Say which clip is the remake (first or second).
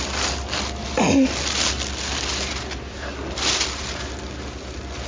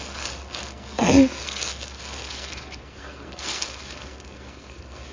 second